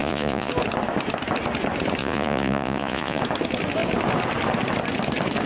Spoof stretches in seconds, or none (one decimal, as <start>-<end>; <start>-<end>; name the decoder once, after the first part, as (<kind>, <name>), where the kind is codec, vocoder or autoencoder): 0.0-0.5 (vocoder, Vocos); 2.0-3.2